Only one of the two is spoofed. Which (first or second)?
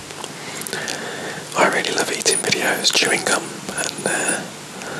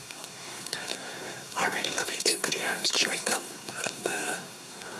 second